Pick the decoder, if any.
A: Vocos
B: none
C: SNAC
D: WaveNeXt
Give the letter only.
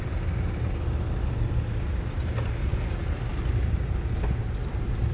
B